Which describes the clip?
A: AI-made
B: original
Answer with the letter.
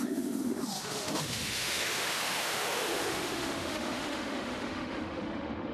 A